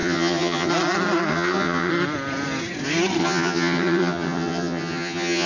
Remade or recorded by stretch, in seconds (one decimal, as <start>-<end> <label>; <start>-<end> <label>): 0.0-0.7 remade; 0.7-1.3 recorded; 1.3-1.9 remade; 1.9-3.2 recorded; 3.2-5.5 remade